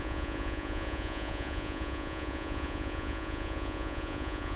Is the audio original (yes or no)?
no